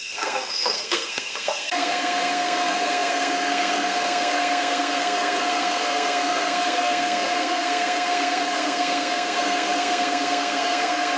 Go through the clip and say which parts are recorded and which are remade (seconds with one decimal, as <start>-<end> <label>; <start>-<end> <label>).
0.0-11.2 remade